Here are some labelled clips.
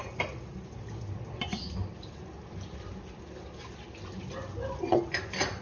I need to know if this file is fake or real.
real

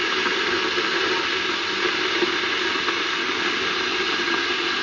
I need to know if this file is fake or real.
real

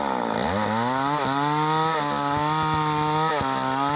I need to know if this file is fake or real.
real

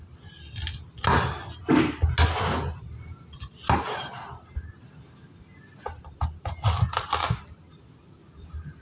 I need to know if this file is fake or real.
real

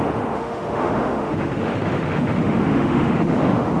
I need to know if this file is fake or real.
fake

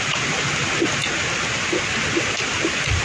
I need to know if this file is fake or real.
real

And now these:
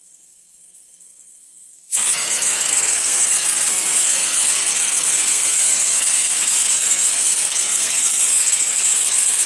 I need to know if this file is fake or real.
fake